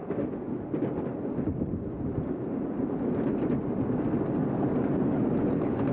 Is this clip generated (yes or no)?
no